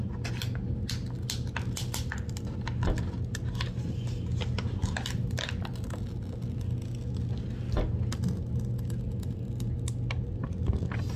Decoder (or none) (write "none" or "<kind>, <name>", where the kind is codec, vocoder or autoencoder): none